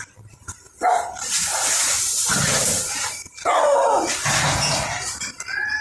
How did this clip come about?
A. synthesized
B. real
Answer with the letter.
B